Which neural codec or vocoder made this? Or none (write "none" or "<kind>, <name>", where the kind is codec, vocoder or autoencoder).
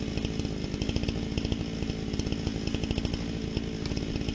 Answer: none